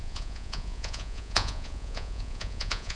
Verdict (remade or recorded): remade